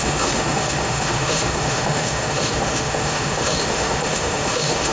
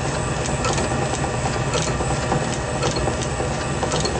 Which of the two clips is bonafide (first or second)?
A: second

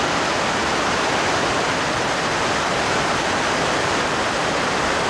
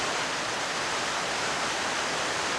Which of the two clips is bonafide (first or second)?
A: second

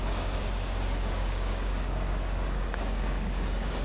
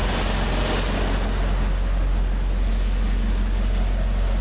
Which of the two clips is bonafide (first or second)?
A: second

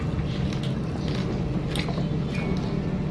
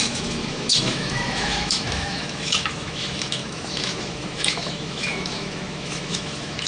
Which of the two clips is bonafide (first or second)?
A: first